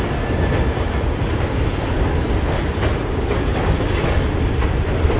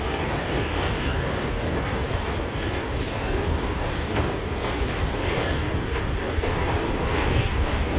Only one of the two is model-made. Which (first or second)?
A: second